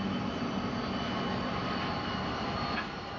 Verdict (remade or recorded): recorded